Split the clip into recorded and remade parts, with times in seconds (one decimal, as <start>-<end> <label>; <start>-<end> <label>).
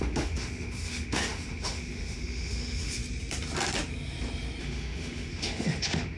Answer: 0.0-3.0 remade; 3.0-4.6 recorded; 4.6-6.2 remade